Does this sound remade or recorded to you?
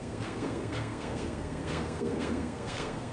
remade